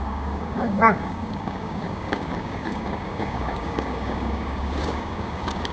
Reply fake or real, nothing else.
fake